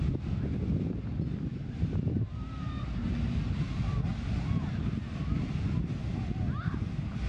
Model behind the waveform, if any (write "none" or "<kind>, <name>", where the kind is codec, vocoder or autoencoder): none